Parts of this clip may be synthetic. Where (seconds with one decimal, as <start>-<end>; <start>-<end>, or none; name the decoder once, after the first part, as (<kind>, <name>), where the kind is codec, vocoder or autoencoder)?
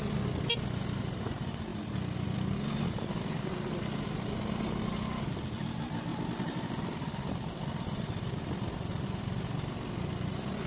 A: 6.1-9.4 (vocoder, BigVGAN v2)